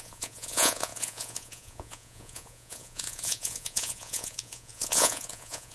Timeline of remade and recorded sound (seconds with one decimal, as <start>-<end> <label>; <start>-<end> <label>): 0.0-5.7 remade